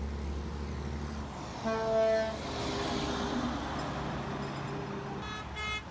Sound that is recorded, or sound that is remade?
recorded